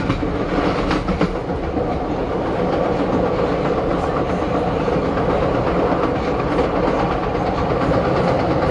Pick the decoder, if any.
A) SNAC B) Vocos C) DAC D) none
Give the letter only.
D